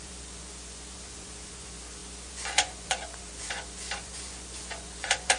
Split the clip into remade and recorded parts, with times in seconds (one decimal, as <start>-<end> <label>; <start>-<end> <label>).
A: 0.0-5.4 remade